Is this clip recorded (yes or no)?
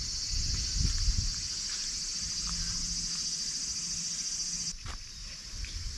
yes